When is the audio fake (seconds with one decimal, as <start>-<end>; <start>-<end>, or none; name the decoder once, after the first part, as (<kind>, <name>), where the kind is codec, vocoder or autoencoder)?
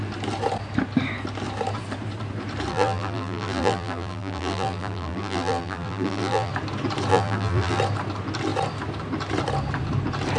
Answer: 2.7-6.5 (vocoder, BigVGAN v2); 7.1-7.8